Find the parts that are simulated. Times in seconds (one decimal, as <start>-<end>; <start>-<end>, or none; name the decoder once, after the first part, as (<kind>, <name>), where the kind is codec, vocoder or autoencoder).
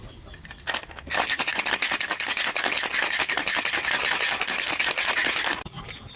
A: none